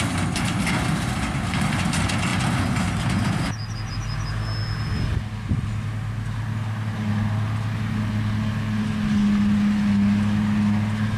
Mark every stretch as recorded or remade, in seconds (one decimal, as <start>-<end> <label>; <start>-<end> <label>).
0.0-11.2 recorded